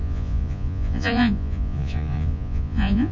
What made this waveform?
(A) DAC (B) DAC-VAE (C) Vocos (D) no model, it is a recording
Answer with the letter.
C